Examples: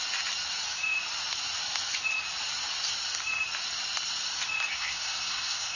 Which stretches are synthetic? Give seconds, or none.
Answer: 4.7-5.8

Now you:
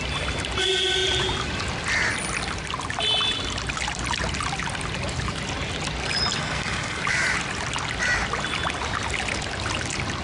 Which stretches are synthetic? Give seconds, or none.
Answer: 6.4-7.0